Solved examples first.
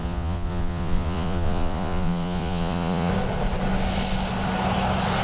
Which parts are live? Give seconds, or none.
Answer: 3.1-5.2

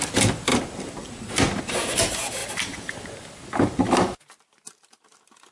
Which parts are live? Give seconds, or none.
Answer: 0.0-5.5